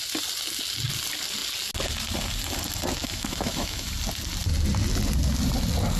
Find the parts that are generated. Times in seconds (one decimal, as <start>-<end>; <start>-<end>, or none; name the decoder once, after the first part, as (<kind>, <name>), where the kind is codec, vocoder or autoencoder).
3.0-3.9 (autoencoder, DAC-VAE)